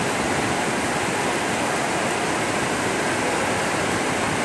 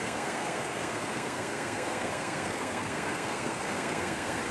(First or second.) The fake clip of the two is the second